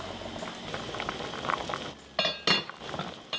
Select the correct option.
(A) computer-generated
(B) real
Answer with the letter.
B